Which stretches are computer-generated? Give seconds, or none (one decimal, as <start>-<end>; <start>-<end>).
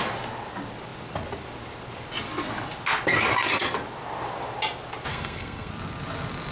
5.1-5.7